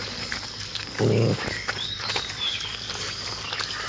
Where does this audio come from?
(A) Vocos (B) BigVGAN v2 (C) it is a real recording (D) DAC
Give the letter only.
D